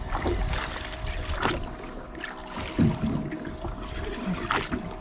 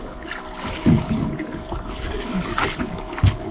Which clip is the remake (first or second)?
second